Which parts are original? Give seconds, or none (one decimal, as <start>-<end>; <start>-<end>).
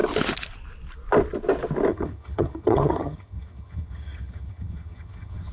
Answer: 0.0-1.9